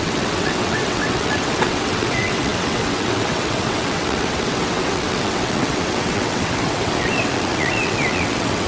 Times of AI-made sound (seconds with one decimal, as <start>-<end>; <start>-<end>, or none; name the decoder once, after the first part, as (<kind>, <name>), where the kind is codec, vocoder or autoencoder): 0.0-8.7 (vocoder, WaveNeXt)